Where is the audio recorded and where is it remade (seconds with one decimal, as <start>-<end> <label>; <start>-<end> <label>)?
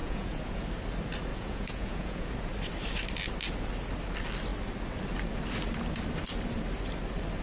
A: 0.0-0.6 remade; 0.6-1.3 recorded; 1.3-2.5 remade; 2.5-7.4 recorded